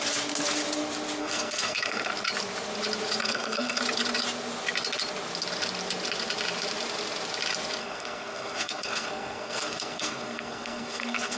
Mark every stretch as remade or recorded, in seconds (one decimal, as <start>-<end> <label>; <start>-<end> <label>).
0.0-1.2 recorded; 1.2-2.1 remade; 2.1-3.2 recorded; 3.2-3.8 remade; 3.8-7.8 recorded; 7.8-11.4 remade